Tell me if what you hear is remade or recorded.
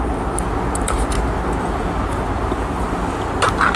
recorded